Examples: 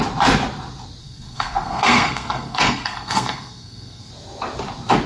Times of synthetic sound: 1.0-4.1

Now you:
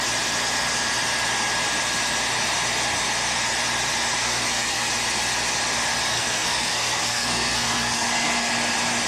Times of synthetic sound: 4.2-4.9; 6.1-8.5

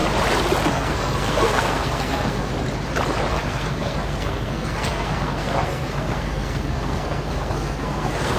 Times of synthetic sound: 0.7-2.5; 3.3-8.4

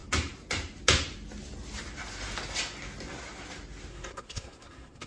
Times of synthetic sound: 3.9-5.1

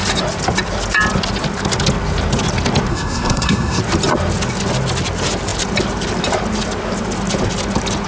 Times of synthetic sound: 2.9-3.8

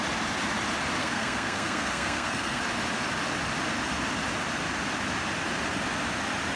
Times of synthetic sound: 1.0-2.6